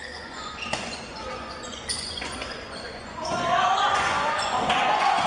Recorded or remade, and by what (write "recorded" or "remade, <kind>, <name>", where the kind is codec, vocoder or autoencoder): remade, vocoder, Vocos